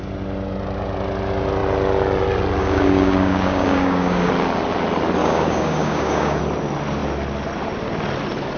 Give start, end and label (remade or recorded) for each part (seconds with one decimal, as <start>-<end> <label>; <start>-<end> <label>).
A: 0.0-2.6 recorded; 2.6-4.3 remade; 4.3-5.2 recorded; 5.2-6.4 remade; 6.4-8.6 recorded

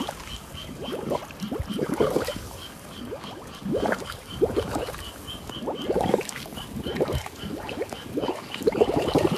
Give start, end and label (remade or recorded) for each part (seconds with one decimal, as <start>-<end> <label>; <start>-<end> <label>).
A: 0.0-1.2 remade; 1.2-1.7 recorded; 1.7-9.4 remade